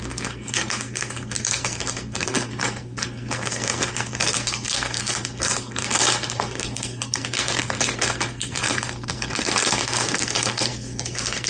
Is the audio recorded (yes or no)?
no